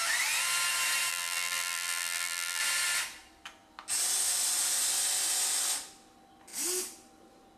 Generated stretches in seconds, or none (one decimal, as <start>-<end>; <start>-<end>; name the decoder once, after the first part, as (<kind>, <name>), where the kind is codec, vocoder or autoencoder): 1.1-2.6 (vocoder, BigVGAN v2)